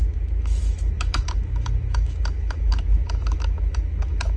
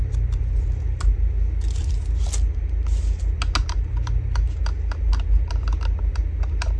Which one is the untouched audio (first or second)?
second